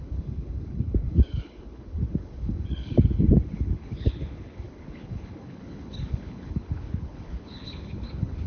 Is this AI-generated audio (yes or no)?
yes